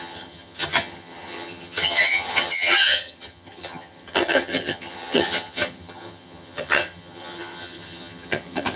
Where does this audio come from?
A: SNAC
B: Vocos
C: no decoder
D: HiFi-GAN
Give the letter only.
D